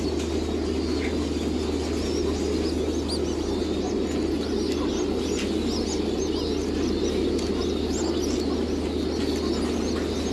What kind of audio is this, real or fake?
real